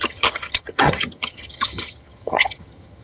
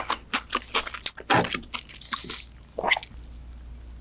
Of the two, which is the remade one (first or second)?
first